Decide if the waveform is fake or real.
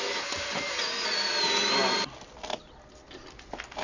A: real